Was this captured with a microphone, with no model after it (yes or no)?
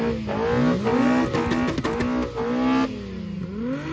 yes